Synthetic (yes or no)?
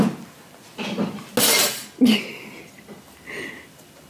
no